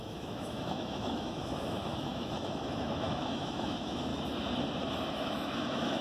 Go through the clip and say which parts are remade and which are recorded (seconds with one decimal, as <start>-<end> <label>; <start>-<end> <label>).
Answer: 0.0-4.1 remade; 4.1-5.1 recorded; 5.1-6.0 remade